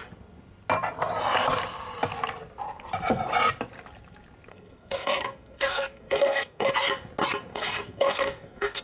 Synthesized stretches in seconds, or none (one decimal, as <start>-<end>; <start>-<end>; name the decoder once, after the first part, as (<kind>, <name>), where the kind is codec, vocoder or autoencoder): 4.5-6.7 (codec, SNAC); 7.5-8.8

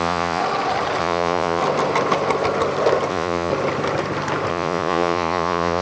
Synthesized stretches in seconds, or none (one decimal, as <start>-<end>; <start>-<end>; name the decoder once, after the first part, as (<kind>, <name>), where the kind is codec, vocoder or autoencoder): 0.0-0.4 (vocoder, Vocos); 1.0-1.6; 3.1-3.5; 4.5-5.8

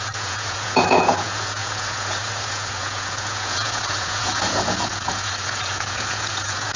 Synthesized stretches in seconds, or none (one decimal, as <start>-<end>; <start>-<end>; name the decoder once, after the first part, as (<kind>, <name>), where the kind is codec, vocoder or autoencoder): 0.0-6.8 (vocoder, Vocos)